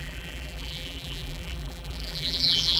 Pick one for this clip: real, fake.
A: fake